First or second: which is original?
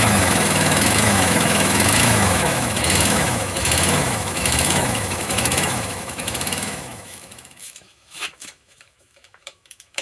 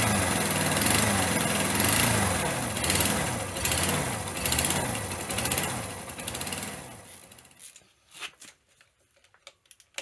second